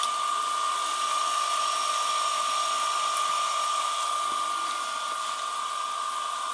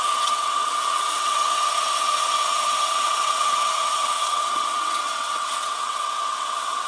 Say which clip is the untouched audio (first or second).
first